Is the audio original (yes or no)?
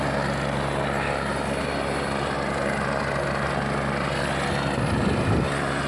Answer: yes